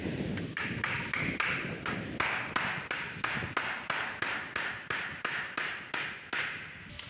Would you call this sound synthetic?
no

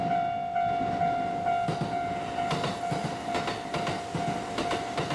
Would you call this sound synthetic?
no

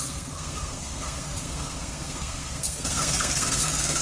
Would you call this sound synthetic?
yes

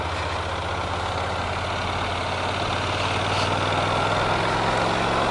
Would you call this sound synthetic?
no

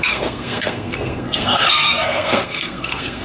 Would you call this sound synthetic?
yes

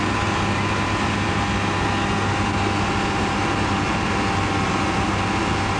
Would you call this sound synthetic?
no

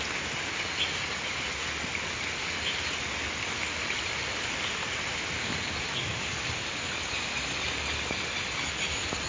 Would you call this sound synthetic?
no